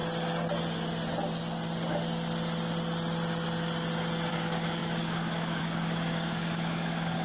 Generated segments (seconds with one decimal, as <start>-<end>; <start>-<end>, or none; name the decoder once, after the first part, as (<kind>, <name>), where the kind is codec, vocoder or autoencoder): 4.3-7.2 (codec, DAC)